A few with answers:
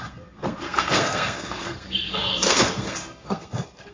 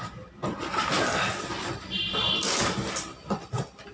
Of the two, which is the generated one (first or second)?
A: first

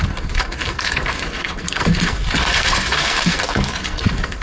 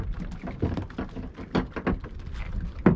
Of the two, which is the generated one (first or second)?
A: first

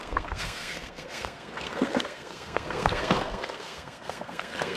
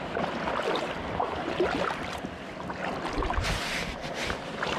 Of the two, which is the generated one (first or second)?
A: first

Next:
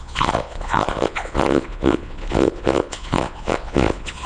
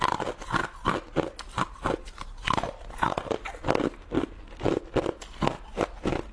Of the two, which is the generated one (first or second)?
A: first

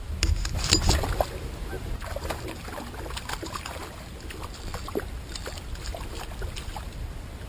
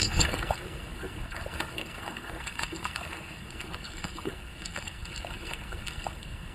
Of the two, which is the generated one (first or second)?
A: second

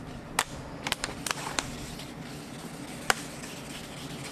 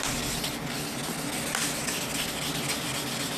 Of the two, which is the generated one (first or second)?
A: first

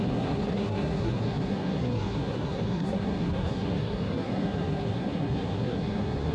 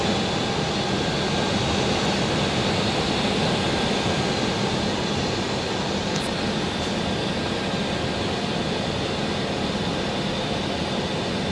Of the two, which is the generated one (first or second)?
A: first